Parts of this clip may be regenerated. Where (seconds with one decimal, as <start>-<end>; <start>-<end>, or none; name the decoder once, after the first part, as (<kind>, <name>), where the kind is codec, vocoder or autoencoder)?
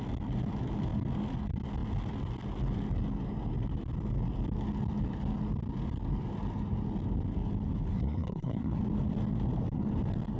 7.9-8.8 (codec, SNAC)